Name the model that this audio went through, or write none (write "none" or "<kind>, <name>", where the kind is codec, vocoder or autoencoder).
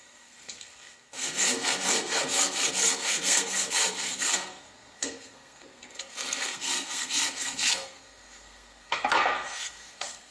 codec, SNAC